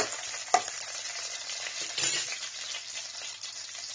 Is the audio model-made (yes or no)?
no